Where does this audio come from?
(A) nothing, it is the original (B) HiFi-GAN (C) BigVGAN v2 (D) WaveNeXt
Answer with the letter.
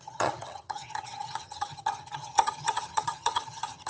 B